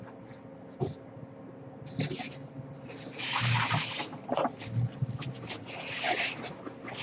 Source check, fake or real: real